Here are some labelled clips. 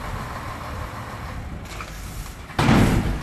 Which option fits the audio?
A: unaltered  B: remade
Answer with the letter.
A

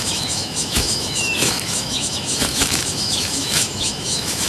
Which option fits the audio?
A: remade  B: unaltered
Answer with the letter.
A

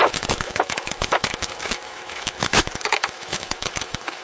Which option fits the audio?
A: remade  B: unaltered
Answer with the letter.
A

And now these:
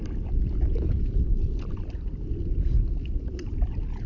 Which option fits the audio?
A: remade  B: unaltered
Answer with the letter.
B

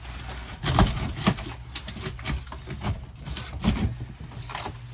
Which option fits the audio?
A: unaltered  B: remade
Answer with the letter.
A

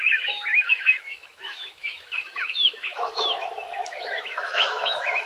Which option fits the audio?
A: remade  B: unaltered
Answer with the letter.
A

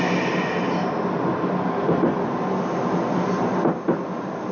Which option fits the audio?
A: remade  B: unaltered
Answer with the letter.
B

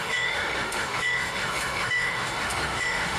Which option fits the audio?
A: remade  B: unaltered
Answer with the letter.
A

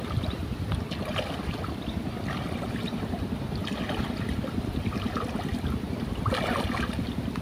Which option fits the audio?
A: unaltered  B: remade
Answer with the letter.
A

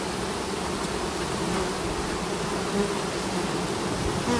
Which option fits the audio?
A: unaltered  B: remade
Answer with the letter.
A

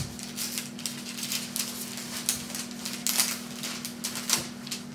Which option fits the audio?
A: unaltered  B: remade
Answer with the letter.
A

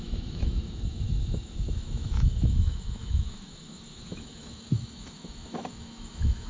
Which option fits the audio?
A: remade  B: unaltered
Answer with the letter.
A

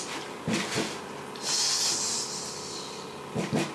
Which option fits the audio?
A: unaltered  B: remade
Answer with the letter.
A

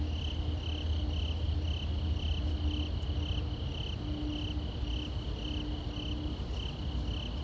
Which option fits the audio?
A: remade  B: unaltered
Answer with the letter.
B